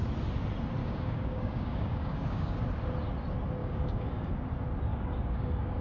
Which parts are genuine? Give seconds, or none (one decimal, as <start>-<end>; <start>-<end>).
0.0-0.8; 2.6-3.6; 4.3-4.9